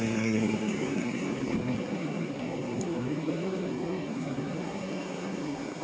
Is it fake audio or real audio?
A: fake